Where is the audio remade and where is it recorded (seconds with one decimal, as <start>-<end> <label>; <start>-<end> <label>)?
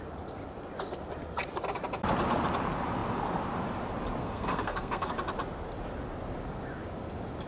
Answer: 0.0-4.2 recorded; 4.2-5.1 remade; 5.1-7.5 recorded